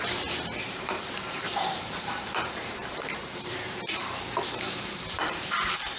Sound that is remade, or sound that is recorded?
remade